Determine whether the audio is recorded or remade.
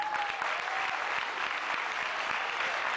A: recorded